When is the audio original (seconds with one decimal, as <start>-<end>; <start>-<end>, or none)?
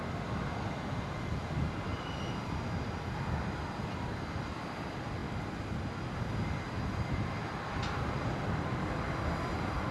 0.0-9.9